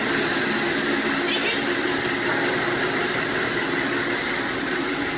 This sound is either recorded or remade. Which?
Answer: recorded